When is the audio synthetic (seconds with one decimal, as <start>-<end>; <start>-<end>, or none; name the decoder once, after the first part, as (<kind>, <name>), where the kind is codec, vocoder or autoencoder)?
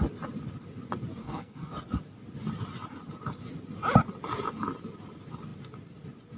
1.2-1.7 (codec, SNAC)